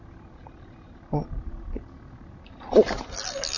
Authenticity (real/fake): real